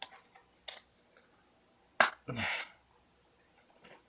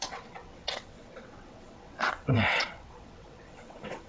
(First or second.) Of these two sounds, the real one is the first